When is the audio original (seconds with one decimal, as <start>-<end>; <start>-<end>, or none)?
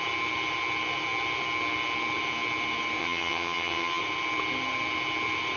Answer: 0.0-3.0; 4.0-5.6